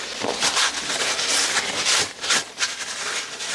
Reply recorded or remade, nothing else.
recorded